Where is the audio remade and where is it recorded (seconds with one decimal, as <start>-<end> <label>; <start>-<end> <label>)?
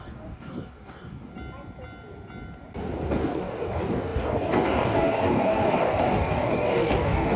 0.0-1.3 remade; 1.3-3.1 recorded; 3.1-7.4 remade